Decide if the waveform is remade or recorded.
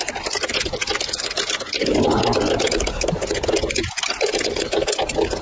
remade